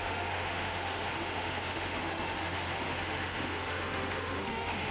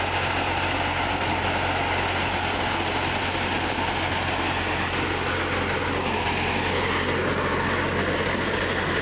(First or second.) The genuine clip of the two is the second